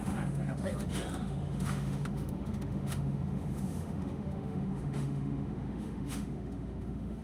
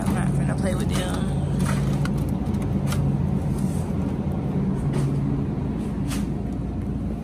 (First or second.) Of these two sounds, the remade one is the first